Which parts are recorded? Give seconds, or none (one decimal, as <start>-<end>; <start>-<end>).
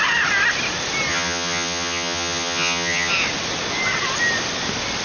0.0-1.1; 3.1-5.0